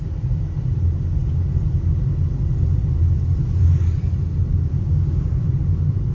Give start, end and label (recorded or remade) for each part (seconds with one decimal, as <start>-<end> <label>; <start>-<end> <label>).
0.0-4.7 recorded; 4.7-5.3 remade; 5.3-6.1 recorded